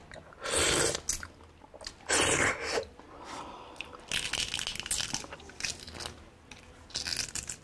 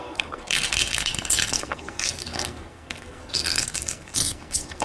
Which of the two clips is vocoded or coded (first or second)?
second